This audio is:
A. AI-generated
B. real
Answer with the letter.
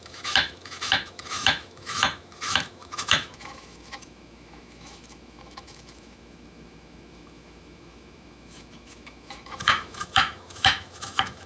A